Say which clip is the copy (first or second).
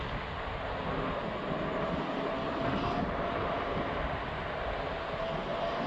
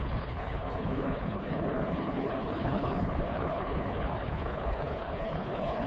second